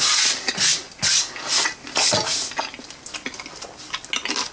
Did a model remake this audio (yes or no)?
no